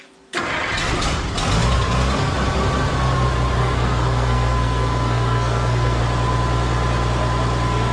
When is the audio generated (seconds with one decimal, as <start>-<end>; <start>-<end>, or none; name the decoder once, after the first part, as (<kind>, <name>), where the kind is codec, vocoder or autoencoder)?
3.6-6.0 (codec, SNAC)